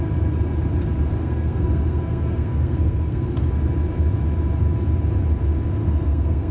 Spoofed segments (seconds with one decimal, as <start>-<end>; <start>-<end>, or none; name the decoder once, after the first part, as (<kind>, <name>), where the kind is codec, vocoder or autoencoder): 1.2-3.5 (codec, SNAC); 5.8-6.5